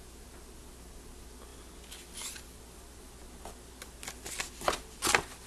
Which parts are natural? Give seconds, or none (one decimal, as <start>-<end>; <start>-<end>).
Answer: 0.0-5.5